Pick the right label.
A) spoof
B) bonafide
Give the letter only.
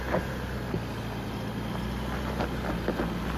B